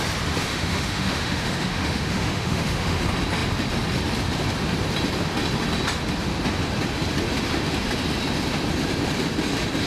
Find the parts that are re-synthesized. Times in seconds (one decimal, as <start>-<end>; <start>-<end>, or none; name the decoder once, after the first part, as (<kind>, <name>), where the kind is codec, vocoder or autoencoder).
0.4-3.0 (autoencoder, DAC-VAE)